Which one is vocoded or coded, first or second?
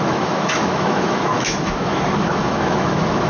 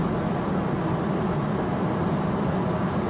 first